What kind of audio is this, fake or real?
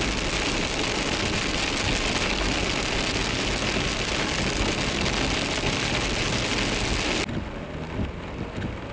real